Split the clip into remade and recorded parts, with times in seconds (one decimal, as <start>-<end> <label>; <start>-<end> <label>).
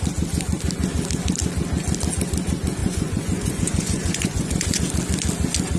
0.0-2.8 recorded; 2.8-4.8 remade; 4.8-5.8 recorded